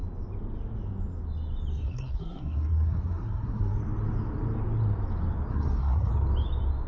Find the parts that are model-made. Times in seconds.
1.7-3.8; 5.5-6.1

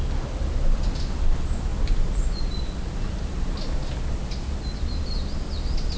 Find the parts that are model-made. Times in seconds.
none

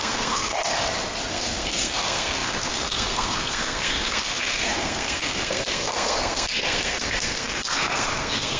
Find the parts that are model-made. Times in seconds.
0.0-0.7; 1.3-8.6